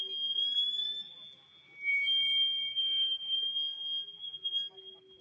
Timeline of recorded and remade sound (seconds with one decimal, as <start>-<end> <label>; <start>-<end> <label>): 0.0-1.9 recorded; 1.9-2.7 remade; 2.7-5.2 recorded